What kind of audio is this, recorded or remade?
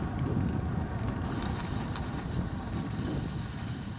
recorded